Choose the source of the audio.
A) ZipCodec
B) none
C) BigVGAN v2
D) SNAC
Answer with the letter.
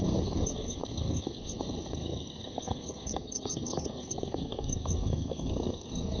D